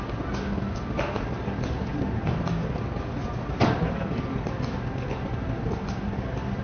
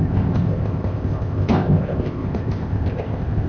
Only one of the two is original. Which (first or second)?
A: first